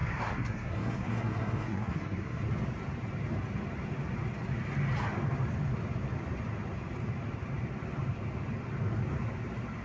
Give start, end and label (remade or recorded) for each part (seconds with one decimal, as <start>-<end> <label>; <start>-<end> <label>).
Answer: 0.0-2.4 remade; 2.4-9.8 recorded